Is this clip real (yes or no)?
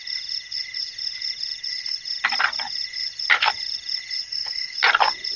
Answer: yes